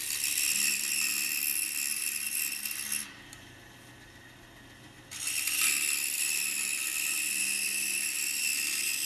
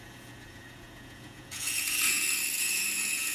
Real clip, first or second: first